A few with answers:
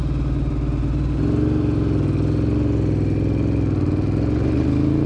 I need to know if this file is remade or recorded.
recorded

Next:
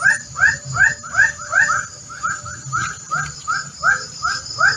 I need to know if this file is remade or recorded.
recorded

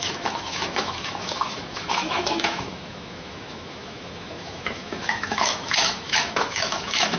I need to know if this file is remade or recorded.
remade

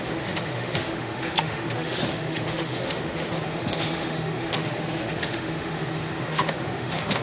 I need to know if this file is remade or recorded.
remade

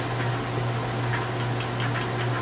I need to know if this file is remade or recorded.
recorded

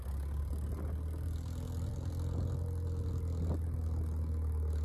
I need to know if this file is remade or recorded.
recorded